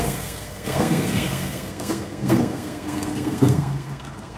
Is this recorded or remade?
remade